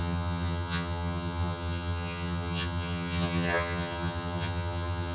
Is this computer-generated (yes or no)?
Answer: yes